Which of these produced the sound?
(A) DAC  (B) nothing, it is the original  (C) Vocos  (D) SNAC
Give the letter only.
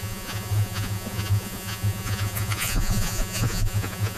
C